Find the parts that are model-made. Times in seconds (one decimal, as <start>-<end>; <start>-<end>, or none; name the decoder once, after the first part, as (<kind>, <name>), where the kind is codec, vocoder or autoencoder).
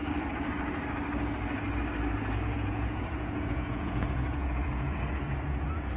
2.4-6.0 (vocoder, Vocos)